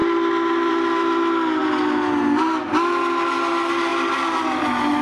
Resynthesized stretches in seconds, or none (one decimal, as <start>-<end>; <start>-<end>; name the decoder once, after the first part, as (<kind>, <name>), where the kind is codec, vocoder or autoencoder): none